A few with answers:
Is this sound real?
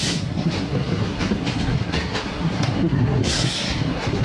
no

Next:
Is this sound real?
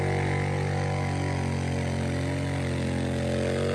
yes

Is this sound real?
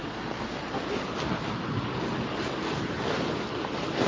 yes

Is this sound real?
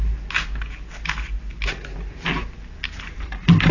yes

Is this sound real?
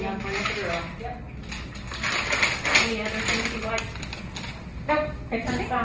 yes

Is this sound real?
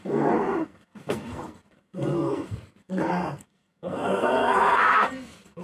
no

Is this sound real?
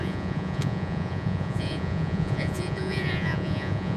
no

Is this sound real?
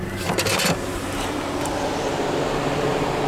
no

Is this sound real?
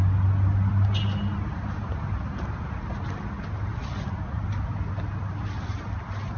yes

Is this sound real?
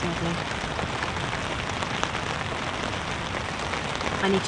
yes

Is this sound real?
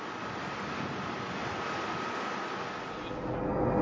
yes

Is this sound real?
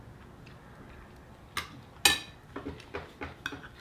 yes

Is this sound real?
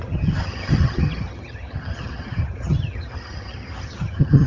no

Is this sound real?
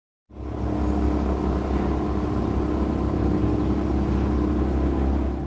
yes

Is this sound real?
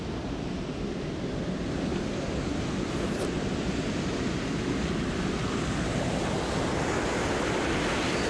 yes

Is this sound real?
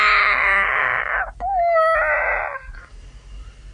yes